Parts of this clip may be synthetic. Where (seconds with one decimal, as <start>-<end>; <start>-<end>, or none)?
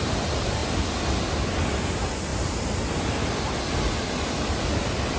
none